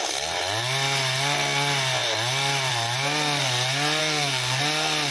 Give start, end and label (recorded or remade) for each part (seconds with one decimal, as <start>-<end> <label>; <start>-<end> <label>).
0.0-4.0 recorded; 4.0-4.6 remade; 4.6-5.1 recorded